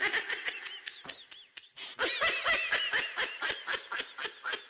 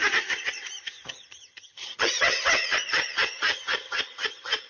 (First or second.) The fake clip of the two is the second